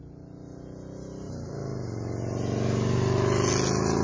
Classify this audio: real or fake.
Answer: real